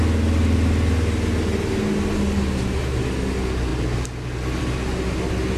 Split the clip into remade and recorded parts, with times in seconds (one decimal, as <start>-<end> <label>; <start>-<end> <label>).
0.0-5.6 recorded